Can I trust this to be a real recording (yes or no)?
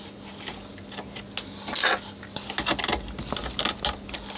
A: yes